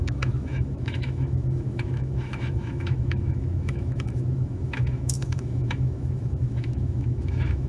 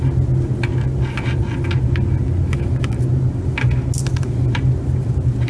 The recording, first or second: second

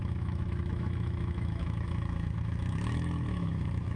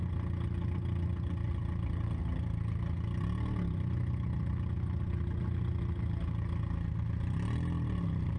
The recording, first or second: second